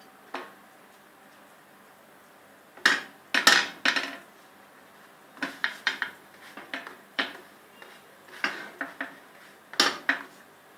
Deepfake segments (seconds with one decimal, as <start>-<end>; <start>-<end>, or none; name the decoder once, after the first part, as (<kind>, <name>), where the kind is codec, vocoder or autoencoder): 5.6-8.5 (vocoder, BigVGAN v2)

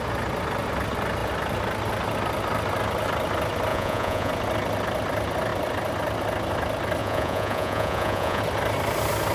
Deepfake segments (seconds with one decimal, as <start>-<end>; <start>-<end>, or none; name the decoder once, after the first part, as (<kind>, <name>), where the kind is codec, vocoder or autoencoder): 3.7-4.3 (vocoder, Vocos); 7.0-8.4

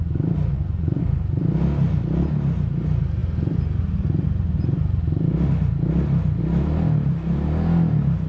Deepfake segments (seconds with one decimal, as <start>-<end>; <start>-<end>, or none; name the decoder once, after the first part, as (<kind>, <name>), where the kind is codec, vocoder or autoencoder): 0.5-1.0 (vocoder, Vocos)

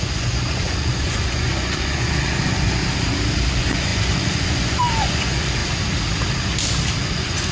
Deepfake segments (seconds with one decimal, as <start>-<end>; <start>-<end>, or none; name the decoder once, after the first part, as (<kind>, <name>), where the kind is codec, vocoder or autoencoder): 0.0-2.8 (vocoder, Vocos); 3.5-5.6; 7.0-7.5

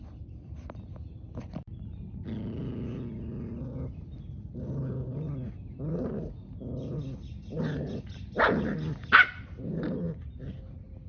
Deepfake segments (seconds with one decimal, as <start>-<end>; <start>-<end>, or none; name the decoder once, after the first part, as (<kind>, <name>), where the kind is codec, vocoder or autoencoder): none

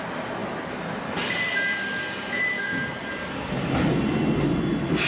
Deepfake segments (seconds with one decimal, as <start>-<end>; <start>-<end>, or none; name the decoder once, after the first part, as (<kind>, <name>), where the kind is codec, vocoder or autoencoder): 0.4-3.5 (vocoder, BigVGAN v2)

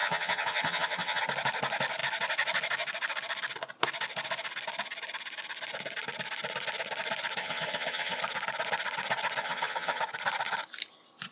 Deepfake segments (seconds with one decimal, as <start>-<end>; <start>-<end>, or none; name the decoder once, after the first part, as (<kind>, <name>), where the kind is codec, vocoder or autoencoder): 0.0-1.2 (vocoder, HiFi-GAN); 7.4-8.2; 9.4-10.0